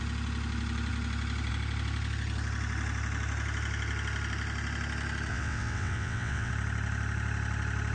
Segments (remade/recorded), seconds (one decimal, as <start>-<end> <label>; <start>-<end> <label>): 0.0-5.3 recorded; 5.3-6.5 remade; 6.5-7.9 recorded